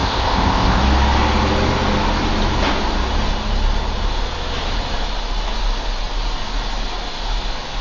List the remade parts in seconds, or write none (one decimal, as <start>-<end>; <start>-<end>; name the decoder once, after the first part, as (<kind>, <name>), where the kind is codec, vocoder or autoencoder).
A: 0.0-0.8 (codec, ZipCodec)